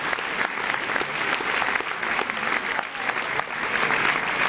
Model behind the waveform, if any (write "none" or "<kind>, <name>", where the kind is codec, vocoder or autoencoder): none